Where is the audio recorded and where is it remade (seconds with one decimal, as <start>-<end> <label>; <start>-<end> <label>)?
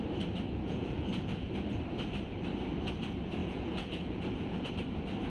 0.0-0.6 recorded; 0.6-1.5 remade; 1.5-3.4 recorded; 3.4-4.7 remade; 4.7-5.3 recorded